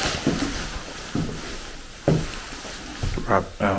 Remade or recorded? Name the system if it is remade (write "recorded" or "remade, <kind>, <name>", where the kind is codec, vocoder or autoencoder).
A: recorded